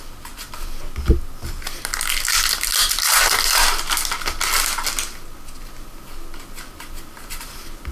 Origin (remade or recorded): recorded